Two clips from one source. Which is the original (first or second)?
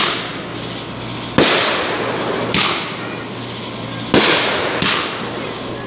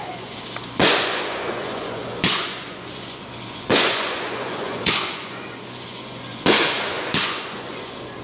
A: first